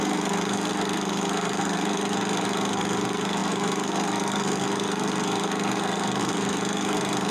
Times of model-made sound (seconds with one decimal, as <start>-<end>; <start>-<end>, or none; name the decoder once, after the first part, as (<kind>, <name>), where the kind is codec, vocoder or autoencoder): 0.0-7.3 (codec, SNAC)